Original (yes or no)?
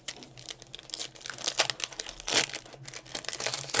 yes